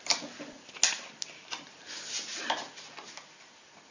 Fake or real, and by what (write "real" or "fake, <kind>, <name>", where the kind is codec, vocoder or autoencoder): real